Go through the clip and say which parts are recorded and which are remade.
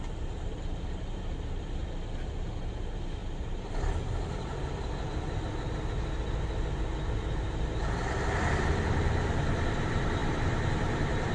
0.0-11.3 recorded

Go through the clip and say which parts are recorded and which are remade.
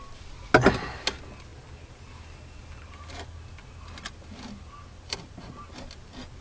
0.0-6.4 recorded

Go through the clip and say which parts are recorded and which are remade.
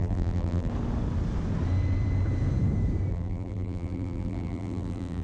0.0-0.7 remade; 0.7-3.1 recorded; 3.1-5.2 remade